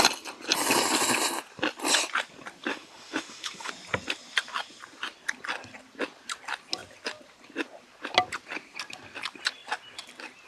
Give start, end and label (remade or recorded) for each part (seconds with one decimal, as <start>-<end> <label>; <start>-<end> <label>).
0.0-2.7 recorded; 2.7-3.7 remade; 3.7-10.5 recorded